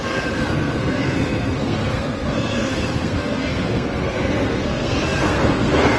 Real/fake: fake